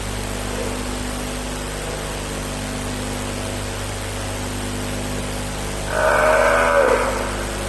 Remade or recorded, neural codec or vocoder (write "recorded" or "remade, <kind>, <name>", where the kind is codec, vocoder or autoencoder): recorded